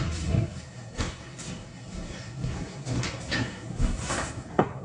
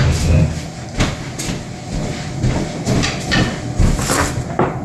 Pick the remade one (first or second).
first